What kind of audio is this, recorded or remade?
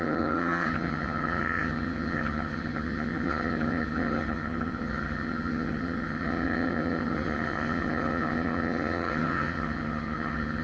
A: remade